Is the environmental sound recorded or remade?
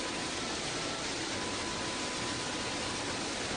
recorded